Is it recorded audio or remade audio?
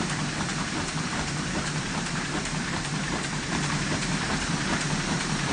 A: remade